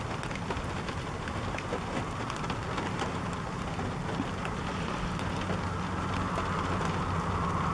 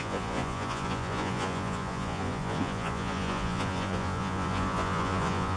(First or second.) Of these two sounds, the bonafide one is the first